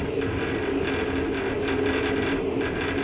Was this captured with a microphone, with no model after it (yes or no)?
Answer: yes